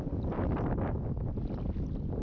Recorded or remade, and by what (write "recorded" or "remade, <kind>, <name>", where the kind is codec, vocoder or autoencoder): recorded